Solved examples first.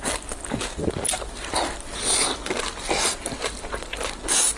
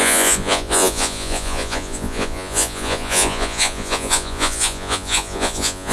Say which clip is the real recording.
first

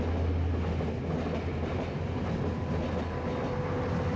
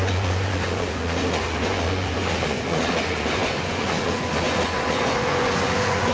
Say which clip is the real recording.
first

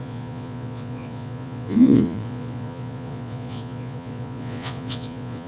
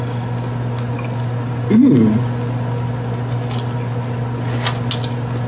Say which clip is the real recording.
second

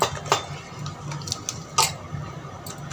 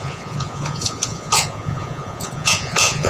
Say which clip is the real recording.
first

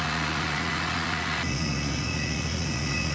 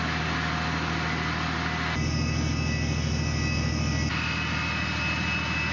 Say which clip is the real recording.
second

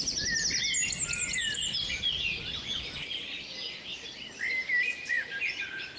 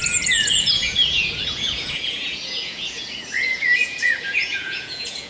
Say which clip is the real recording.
first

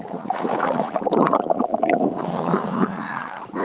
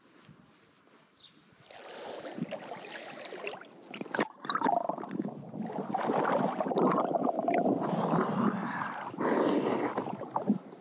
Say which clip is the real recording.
second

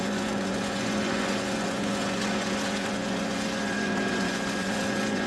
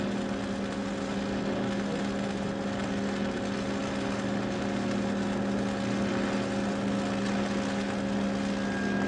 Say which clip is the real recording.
second